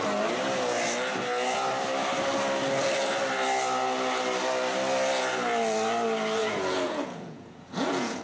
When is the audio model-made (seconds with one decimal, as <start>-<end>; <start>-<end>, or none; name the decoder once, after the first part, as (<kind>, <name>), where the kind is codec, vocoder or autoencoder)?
6.4-8.2 (vocoder, Vocos)